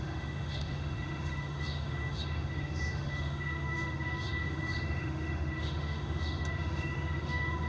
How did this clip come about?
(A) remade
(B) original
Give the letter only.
A